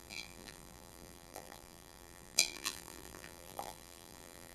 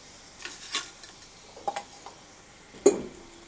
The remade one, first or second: first